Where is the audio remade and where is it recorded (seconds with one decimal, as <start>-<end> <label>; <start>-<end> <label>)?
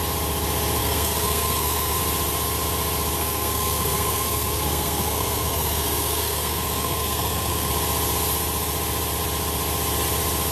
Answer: 0.0-0.8 recorded; 0.8-2.0 remade; 2.0-3.2 recorded; 3.2-7.7 remade; 7.7-10.5 recorded